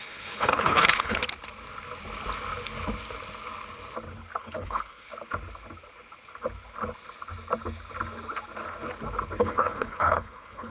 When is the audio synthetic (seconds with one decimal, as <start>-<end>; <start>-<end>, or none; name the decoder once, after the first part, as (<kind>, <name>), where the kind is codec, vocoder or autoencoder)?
0.0-1.2 (codec, HILCodec); 4.4-5.1; 9.4-10.7